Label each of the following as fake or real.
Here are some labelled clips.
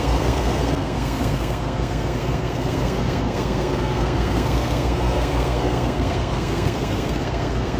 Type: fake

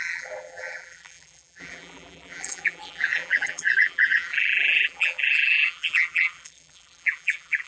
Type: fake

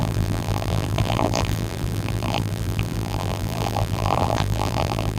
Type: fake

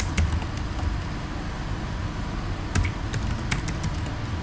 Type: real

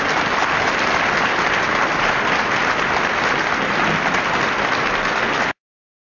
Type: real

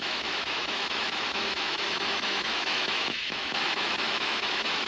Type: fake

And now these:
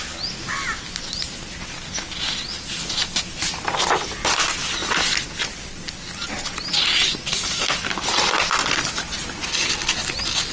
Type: real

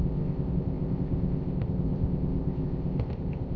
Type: fake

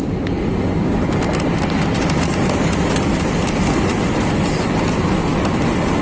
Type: fake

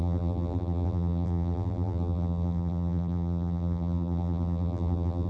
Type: fake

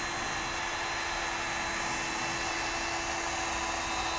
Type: real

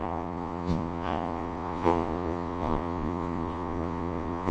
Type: fake